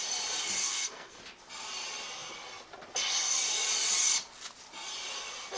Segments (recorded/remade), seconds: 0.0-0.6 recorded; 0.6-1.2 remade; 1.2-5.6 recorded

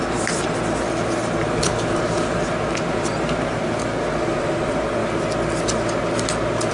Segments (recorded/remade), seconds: 0.0-6.7 recorded

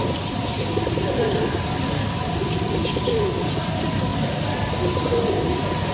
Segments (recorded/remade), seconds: 0.0-5.9 recorded

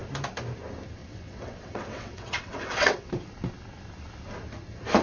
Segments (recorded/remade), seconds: 0.0-1.0 recorded; 1.0-3.1 remade; 3.1-5.0 recorded

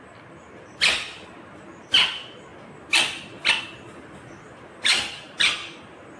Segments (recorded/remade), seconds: 0.0-6.2 recorded

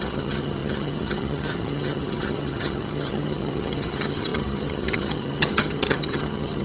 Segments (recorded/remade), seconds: 0.0-6.6 remade